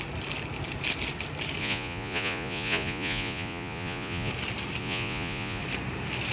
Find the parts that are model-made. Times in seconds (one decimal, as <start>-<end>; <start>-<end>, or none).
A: 1.6-4.3; 4.8-5.6